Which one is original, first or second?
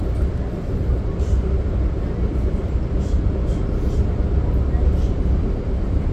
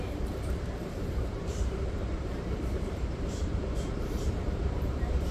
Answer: first